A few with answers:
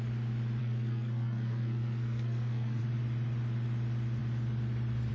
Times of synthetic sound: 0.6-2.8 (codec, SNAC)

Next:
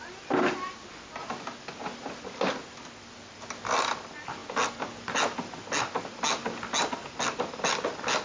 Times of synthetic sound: none

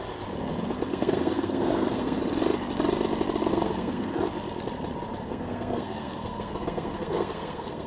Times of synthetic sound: 0.9-2.2 (codec, SNAC); 3.5-4.1; 5.2-7.9

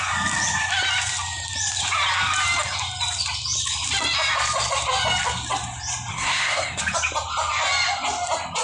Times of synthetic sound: 6.1-6.8 (codec, SNAC)